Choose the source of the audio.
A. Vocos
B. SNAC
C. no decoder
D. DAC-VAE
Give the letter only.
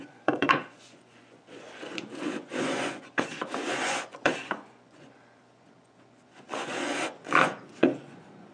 A